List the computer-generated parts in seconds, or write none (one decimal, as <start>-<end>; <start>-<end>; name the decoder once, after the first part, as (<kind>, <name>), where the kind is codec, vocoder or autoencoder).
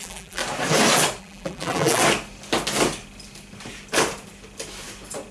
0.0-0.4 (vocoder, BigVGAN v2); 1.2-2.0